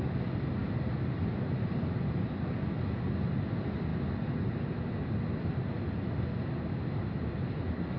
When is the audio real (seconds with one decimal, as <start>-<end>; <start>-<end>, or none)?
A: 0.0-8.0